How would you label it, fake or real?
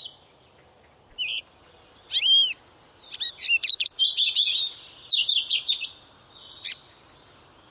real